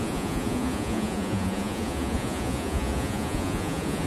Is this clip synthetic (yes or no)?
yes